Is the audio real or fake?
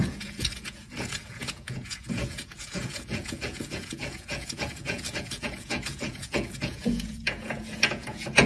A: fake